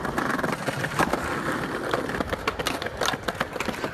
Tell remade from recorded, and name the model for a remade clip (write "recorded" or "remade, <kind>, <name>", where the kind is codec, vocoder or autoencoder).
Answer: recorded